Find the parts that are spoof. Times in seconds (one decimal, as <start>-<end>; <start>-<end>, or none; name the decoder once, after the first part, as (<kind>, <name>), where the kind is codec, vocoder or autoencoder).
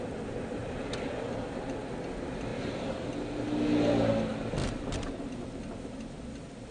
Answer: 0.6-1.8 (vocoder, BigVGAN v2); 2.5-3.1; 4.6-5.4